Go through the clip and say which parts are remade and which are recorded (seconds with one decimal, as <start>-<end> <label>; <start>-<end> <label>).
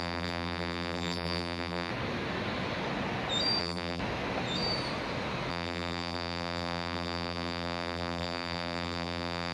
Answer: 0.0-1.9 remade; 1.9-3.6 recorded; 3.6-4.0 remade; 4.0-5.5 recorded; 5.5-9.5 remade